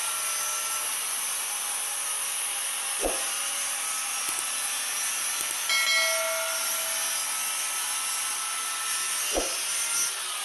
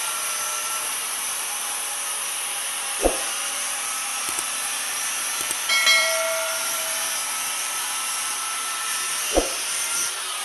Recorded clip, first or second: first